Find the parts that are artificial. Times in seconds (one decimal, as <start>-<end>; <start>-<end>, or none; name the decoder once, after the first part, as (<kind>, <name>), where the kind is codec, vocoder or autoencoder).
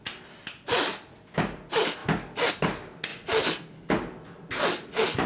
none